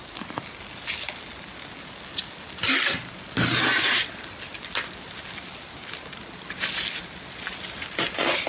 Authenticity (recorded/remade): recorded